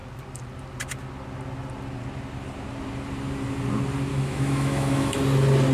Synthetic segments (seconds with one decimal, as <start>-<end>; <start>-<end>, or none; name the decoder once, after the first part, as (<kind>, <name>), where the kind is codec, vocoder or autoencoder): 4.1-5.2 (autoencoder, DAC-VAE)